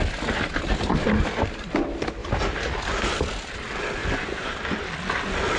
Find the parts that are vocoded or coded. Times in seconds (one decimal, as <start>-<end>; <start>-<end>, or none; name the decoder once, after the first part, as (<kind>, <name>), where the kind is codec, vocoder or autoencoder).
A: 4.0-4.5 (vocoder, Vocos)